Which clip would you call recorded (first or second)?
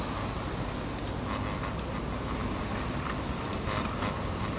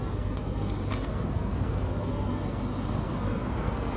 first